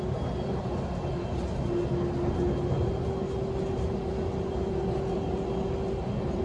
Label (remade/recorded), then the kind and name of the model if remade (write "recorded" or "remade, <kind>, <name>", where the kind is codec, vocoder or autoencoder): recorded